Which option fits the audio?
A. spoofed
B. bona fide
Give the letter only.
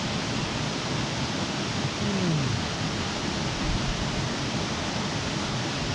B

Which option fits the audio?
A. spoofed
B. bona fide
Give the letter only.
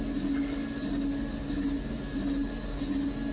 B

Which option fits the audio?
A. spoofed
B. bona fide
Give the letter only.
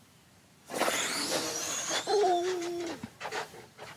A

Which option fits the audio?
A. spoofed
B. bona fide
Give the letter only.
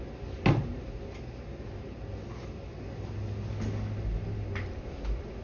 B